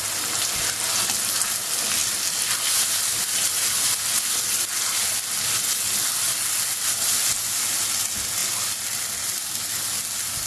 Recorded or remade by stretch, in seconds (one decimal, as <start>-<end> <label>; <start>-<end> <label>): 0.0-10.5 recorded